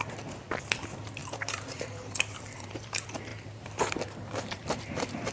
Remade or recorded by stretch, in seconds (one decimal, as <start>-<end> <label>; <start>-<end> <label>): 0.0-1.2 recorded; 1.2-2.8 remade; 2.8-3.3 recorded; 3.3-5.3 remade